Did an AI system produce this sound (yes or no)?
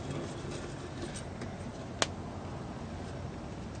no